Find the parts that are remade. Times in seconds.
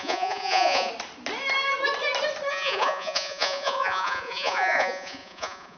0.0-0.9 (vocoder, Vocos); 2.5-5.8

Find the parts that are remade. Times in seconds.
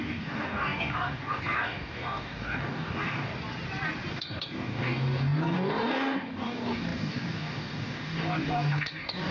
0.0-3.3 (codec, DAC); 4.1-9.3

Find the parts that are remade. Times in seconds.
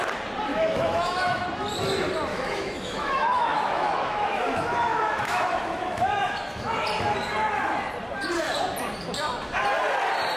0.5-1.4 (autoencoder, DAC-VAE); 2.3-6.7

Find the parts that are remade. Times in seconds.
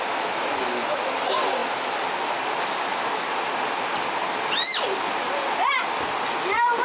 none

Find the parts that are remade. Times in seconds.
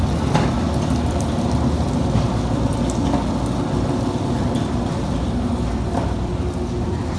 0.0-2.7 (vocoder, BigVGAN v2); 4.3-7.2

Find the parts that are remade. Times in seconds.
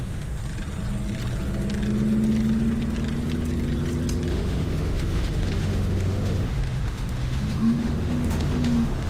0.0-0.4 (autoencoder, DAC-VAE); 4.3-9.1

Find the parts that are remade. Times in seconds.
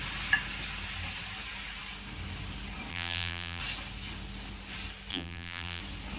2.9-3.6 (vocoder, BigVGAN v2); 5.1-5.8